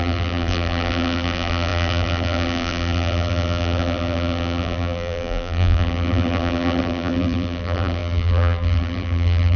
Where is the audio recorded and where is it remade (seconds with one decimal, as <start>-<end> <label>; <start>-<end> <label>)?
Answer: 0.0-9.6 remade

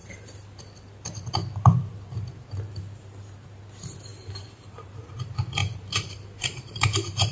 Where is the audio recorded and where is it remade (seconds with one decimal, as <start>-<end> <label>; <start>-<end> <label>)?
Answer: 0.0-0.6 remade; 0.6-4.1 recorded; 4.1-5.1 remade; 5.1-5.6 recorded; 5.6-7.3 remade

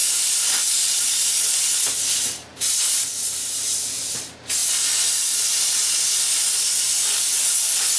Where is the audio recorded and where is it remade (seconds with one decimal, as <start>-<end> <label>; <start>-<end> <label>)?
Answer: 0.0-2.0 remade; 2.0-2.5 recorded; 2.5-3.9 remade; 3.9-4.6 recorded; 4.6-5.4 remade; 5.4-8.0 recorded

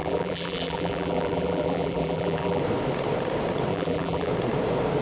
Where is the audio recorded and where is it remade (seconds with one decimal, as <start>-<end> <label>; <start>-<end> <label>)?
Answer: 0.0-2.6 remade; 2.6-3.7 recorded; 3.7-4.3 remade; 4.3-5.0 recorded